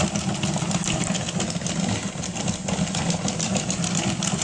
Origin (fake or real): real